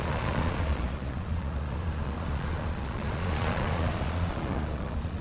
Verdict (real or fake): fake